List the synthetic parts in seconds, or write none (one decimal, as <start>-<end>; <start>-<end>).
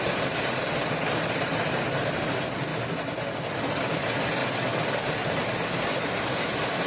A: 0.0-2.7; 3.5-4.4; 5.1-6.9